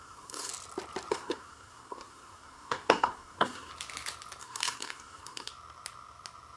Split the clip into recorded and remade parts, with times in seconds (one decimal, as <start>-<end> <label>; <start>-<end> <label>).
0.0-0.5 remade; 0.5-1.1 recorded; 1.1-3.7 remade; 3.7-4.4 recorded; 4.4-5.5 remade; 5.5-6.6 recorded